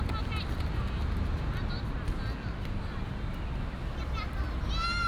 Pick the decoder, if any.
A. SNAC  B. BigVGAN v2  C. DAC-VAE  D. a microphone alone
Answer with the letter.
D